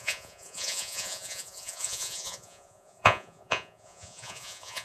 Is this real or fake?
fake